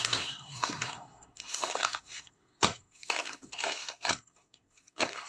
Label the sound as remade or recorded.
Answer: remade